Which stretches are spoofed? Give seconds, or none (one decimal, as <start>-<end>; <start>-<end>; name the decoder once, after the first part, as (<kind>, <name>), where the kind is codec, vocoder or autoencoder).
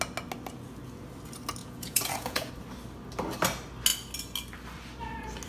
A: 1.6-2.5 (vocoder, Vocos)